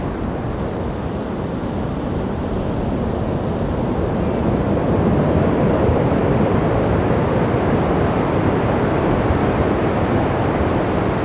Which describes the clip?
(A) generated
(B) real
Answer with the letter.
B